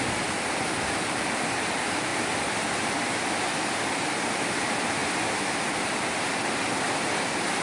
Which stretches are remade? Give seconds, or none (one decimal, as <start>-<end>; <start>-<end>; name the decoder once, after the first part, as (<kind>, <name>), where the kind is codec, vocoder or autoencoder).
none